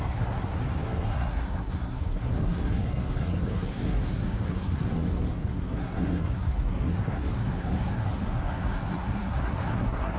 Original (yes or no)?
no